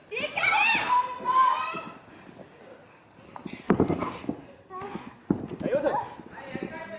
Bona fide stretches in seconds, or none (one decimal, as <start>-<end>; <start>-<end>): 4.2-7.0